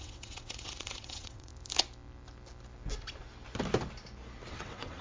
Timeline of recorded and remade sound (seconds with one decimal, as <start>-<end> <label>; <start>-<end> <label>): 0.0-1.5 remade; 1.5-4.5 recorded; 4.5-5.0 remade